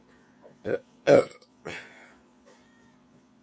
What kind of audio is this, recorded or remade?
remade